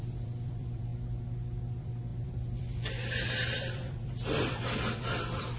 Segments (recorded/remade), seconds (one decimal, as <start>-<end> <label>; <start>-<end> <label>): 0.0-0.9 remade; 0.9-1.7 recorded; 1.7-5.6 remade